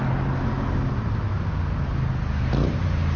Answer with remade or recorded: recorded